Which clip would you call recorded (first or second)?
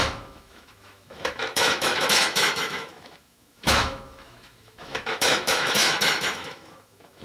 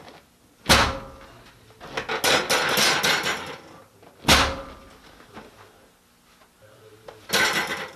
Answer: second